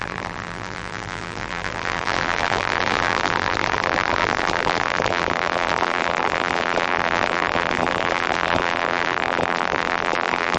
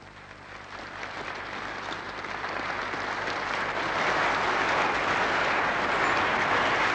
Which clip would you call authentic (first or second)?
second